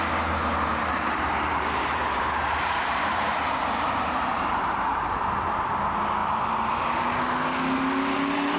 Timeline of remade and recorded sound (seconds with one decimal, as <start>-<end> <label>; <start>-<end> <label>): 0.0-0.7 recorded; 0.7-5.7 remade; 5.7-8.6 recorded